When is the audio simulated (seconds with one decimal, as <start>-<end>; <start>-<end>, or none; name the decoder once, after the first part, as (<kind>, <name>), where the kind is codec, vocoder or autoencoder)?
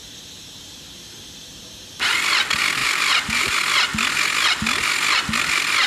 0.0-2.1 (vocoder, BigVGAN v2); 2.8-3.6